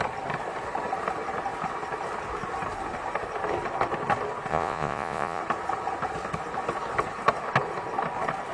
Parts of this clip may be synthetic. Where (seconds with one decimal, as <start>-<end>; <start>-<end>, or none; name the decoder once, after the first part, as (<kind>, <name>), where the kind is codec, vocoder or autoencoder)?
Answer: 4.5-5.4 (vocoder, Vocos)